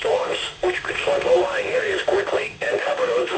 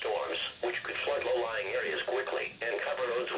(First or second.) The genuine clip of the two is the second